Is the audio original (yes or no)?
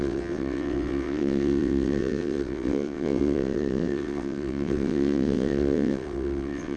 no